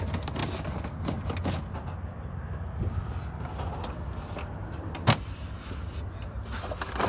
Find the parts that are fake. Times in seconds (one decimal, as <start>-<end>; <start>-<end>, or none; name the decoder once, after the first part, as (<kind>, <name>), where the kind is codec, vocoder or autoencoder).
none